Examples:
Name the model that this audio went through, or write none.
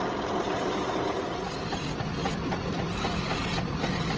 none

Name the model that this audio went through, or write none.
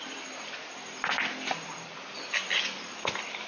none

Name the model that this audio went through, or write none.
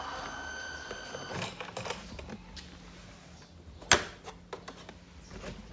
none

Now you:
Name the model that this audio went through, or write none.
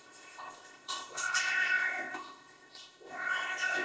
codec, ZipCodec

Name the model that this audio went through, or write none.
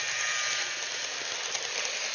none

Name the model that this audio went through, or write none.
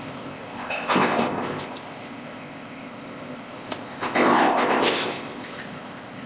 codec, ZipCodec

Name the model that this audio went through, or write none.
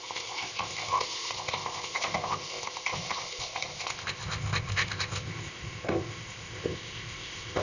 codec, ZipCodec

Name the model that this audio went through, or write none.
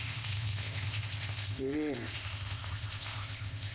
codec, ZipCodec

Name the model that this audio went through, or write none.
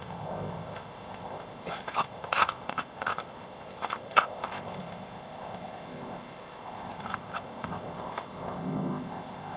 codec, ZipCodec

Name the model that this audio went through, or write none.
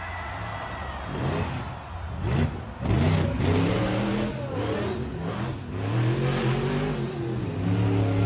none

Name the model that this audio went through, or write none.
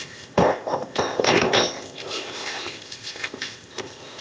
codec, ZipCodec